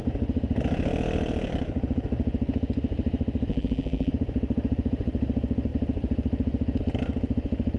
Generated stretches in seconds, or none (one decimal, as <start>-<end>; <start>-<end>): 3.5-4.1

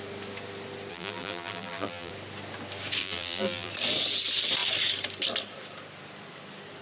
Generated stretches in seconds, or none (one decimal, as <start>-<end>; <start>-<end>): 0.9-2.1; 3.0-3.7

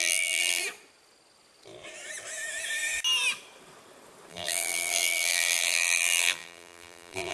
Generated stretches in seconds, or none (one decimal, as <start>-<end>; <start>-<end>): 0.0-0.6; 4.3-7.3

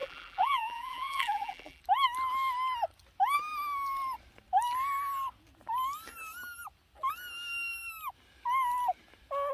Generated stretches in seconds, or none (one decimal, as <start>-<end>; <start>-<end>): 0.0-1.8

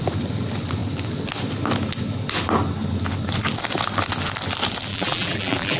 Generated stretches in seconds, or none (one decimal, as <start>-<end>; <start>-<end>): 4.9-5.8

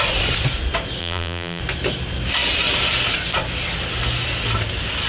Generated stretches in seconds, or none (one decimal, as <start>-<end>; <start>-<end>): 1.0-1.6

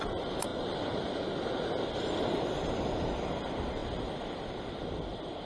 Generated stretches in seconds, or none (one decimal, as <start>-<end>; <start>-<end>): 0.0-0.5; 2.0-5.5